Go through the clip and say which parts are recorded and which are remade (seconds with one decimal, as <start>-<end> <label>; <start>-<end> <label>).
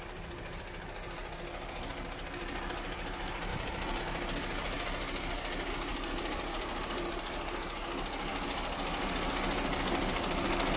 0.0-3.5 recorded; 3.5-4.0 remade; 4.0-5.9 recorded; 5.9-7.1 remade; 7.1-10.8 recorded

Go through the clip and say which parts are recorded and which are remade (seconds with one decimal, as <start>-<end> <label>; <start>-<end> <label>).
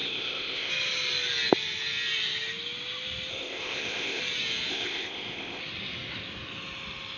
0.0-0.7 remade; 0.7-3.3 recorded; 3.3-4.2 remade; 4.2-4.7 recorded; 4.7-5.6 remade; 5.6-7.2 recorded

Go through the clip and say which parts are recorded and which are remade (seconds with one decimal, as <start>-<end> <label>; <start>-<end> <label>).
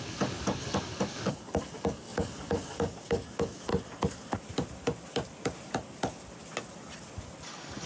0.0-3.7 remade; 3.7-7.9 recorded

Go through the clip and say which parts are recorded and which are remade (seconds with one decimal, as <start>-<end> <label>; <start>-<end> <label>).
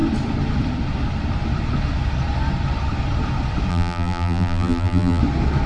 0.0-3.7 recorded; 3.7-5.2 remade; 5.2-5.7 recorded